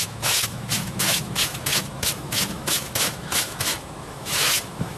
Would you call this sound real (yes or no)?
no